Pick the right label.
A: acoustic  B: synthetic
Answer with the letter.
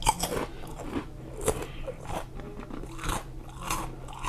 A